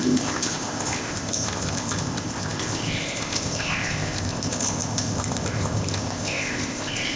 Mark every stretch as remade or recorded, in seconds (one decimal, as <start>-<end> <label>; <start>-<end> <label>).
0.0-7.2 remade